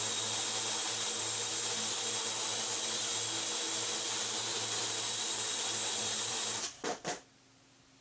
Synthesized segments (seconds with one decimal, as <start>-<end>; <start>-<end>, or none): 6.0-6.8